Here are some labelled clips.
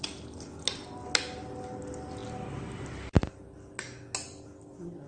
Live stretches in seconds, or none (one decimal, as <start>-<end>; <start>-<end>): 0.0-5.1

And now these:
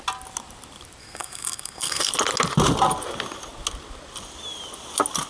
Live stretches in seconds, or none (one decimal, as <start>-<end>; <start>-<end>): 0.0-1.0; 2.1-5.3

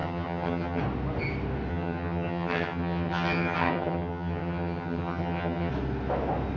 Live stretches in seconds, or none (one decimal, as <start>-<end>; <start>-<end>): 0.8-1.7; 5.7-6.6

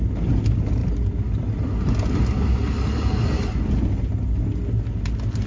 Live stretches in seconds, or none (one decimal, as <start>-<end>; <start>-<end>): 0.0-5.5